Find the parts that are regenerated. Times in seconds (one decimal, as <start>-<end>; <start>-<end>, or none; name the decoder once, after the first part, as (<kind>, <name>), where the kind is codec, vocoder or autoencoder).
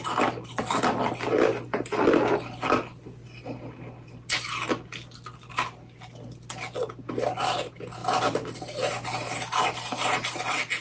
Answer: none